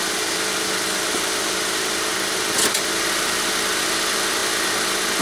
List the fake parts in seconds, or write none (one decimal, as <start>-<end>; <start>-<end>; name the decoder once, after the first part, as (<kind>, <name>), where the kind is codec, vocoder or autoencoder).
none